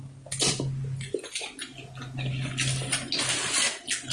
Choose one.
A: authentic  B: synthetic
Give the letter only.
A